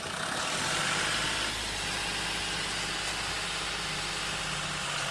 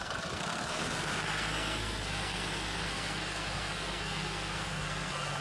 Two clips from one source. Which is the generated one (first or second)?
second